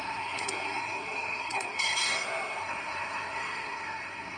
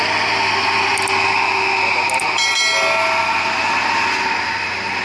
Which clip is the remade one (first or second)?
first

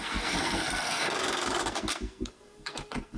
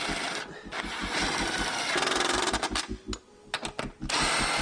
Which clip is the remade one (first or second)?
first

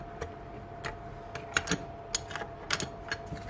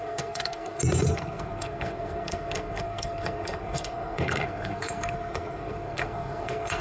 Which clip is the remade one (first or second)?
second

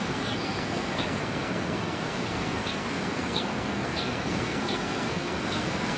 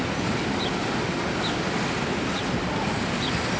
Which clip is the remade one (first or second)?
first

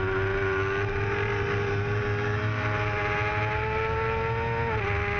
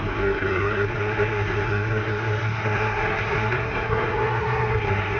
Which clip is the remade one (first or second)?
second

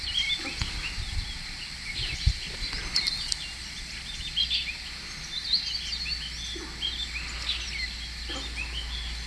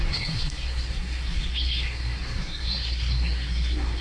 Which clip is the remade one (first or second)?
second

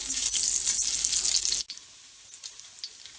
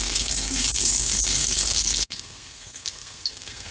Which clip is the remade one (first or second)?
second